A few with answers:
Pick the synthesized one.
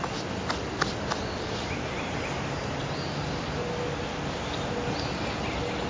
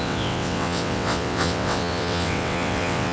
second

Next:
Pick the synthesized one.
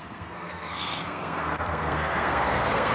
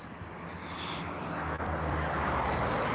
first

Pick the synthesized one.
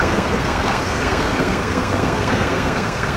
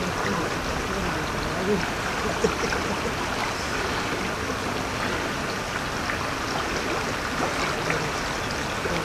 first